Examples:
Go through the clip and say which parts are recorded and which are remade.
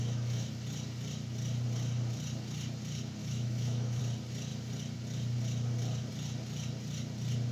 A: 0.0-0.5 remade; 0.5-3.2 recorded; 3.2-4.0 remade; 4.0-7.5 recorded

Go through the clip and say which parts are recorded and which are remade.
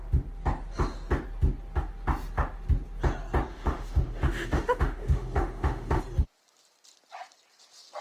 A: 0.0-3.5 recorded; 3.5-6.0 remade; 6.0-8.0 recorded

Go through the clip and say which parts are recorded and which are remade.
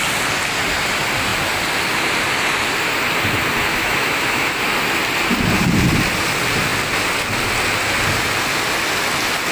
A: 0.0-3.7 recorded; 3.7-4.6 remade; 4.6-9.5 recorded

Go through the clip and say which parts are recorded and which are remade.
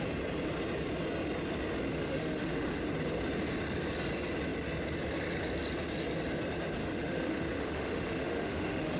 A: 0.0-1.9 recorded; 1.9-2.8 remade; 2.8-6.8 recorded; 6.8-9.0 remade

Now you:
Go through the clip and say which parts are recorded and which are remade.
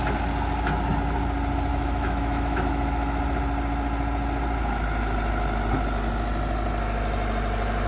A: 0.0-1.7 recorded; 1.7-3.2 remade; 3.2-7.9 recorded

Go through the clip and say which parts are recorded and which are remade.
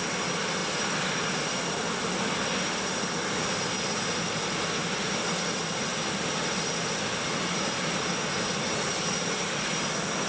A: 0.0-10.3 recorded